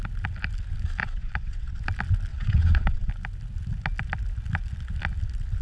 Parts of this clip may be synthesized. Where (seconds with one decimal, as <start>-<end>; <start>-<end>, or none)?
1.0-1.8; 2.3-3.1